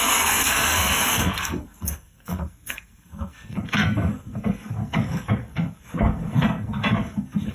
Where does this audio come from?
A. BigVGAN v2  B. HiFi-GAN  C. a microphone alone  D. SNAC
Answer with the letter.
D